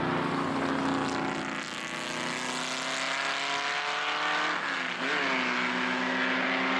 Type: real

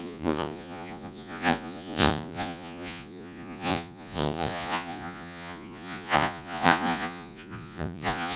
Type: fake